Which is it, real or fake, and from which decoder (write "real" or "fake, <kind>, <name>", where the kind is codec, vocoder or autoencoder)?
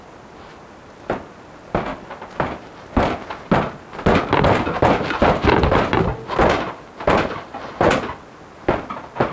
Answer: real